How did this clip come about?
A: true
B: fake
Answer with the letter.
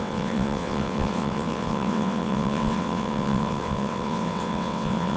B